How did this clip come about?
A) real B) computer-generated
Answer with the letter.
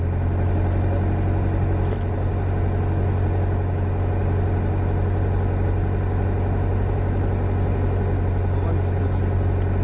A